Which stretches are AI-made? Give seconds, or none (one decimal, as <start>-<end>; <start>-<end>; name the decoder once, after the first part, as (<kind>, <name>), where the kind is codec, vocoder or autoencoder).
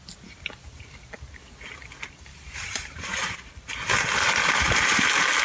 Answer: 2.3-3.7 (vocoder, BigVGAN v2)